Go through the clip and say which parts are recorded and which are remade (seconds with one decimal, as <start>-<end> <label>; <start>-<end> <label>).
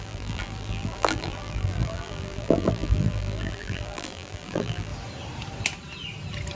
0.0-4.9 remade; 4.9-6.6 recorded